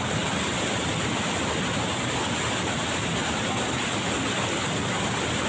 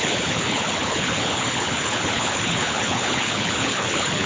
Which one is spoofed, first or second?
second